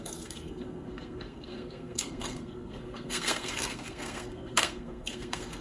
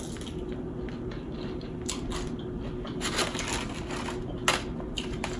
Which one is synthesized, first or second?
first